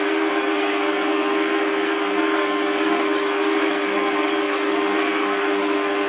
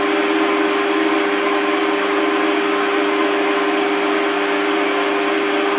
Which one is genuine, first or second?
second